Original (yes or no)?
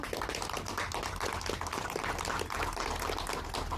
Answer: yes